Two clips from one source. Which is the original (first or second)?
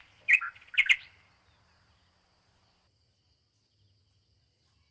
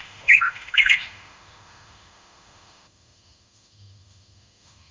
first